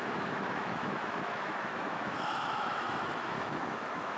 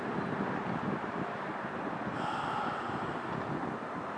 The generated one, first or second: first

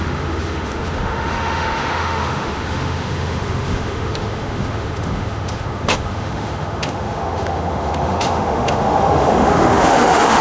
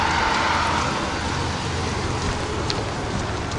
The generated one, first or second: first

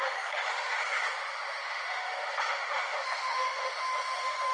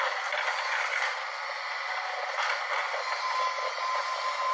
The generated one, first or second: first